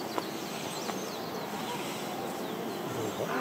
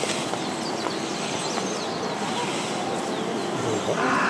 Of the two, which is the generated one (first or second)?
second